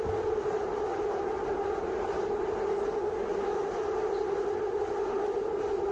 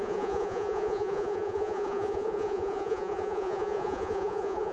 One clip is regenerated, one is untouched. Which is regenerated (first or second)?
second